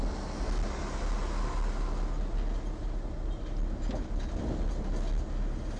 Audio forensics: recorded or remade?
recorded